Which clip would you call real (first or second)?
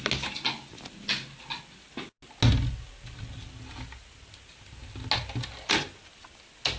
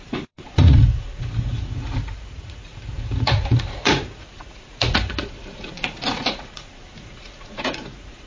first